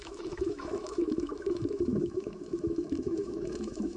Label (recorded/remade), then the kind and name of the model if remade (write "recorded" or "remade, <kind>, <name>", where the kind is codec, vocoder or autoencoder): remade, autoencoder, DAC-VAE